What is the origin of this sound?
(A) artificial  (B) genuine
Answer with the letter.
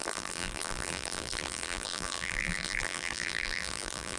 A